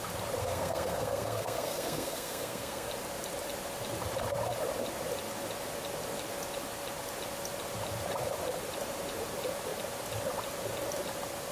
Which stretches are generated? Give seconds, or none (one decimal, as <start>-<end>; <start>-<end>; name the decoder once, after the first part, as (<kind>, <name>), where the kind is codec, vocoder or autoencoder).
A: 0.4-2.9 (codec, SNAC)